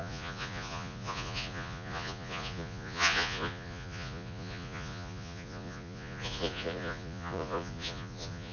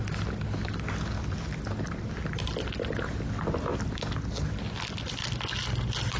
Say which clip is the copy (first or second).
first